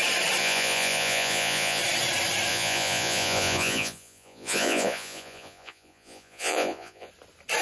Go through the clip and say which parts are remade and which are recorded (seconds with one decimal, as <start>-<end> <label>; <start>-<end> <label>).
0.0-0.4 recorded; 0.4-1.8 remade; 1.8-2.5 recorded; 2.5-7.1 remade; 7.1-7.6 recorded